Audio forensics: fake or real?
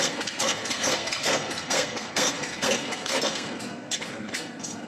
fake